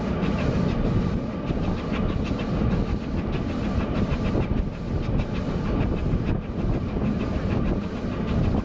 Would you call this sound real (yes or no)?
yes